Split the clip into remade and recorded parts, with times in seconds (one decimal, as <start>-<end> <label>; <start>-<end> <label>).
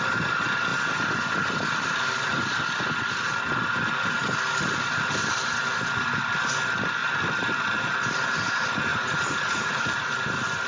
0.0-8.9 recorded; 8.9-9.8 remade; 9.8-10.7 recorded